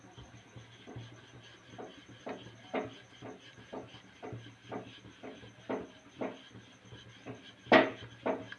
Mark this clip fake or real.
real